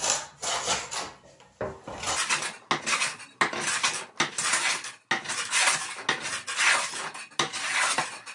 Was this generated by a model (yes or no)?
no